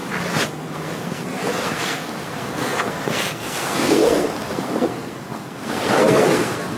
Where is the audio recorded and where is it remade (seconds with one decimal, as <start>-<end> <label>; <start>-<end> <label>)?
0.0-0.5 recorded; 0.5-6.8 remade